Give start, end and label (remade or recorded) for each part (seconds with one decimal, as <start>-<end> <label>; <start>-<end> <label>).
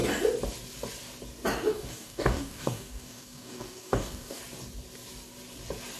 0.0-1.7 recorded; 1.7-4.4 remade; 4.4-6.0 recorded